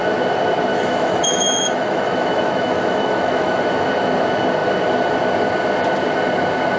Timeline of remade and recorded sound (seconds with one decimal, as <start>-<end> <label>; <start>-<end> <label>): 0.0-0.7 recorded; 0.7-3.6 remade; 3.6-6.8 recorded